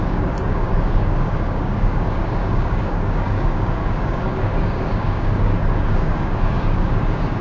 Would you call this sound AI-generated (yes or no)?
yes